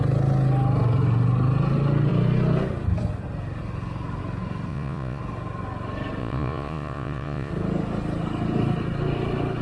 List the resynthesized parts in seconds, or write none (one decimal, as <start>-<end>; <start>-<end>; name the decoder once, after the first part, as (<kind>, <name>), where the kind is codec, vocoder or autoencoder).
4.7-5.2 (vocoder, Vocos); 6.2-7.5